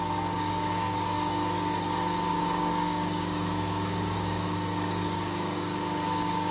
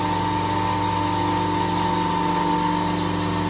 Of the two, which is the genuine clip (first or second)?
second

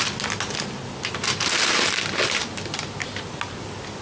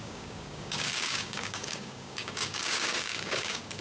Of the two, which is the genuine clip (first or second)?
first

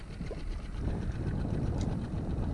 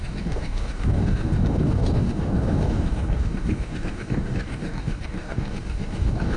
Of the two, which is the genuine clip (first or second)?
first